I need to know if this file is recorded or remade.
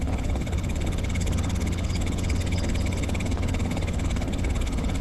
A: remade